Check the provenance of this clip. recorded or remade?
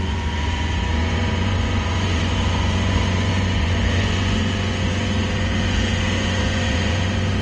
remade